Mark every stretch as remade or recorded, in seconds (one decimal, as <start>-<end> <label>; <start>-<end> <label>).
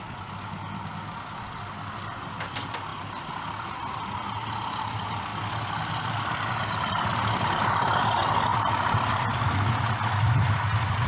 0.0-11.1 recorded